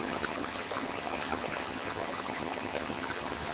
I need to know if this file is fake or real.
fake